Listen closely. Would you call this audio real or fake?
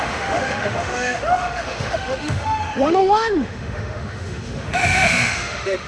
fake